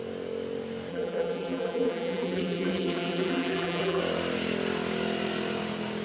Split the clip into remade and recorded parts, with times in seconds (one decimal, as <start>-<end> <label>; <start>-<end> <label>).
0.0-0.9 recorded; 0.9-4.0 remade; 4.0-6.0 recorded

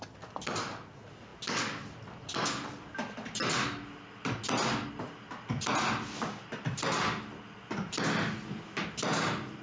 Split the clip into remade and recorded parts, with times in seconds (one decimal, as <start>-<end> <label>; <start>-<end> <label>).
0.0-9.6 recorded